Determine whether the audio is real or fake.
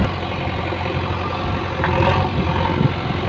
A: real